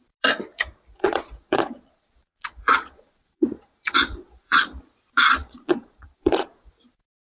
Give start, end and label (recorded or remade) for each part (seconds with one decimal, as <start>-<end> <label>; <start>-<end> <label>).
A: 0.0-0.9 recorded; 0.9-4.6 remade; 4.6-5.4 recorded; 5.4-6.7 remade; 6.7-7.3 recorded